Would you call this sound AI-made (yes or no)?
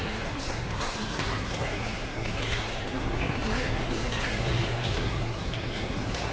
yes